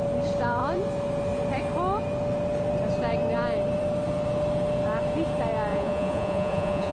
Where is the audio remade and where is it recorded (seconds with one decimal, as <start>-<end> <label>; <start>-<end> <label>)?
0.0-5.7 recorded; 5.7-6.9 remade